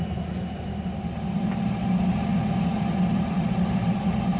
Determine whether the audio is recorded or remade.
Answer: recorded